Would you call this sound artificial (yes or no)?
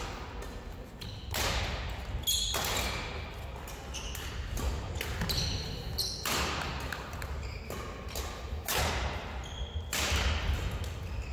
no